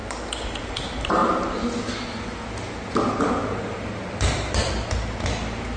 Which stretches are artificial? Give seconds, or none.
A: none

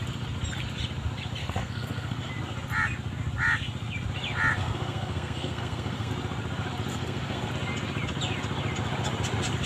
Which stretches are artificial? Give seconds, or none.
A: 1.4-2.3 (codec, SNAC); 4.6-6.1; 6.9-7.5